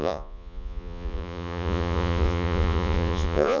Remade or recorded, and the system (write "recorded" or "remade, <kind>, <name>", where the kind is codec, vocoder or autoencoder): remade, vocoder, Vocos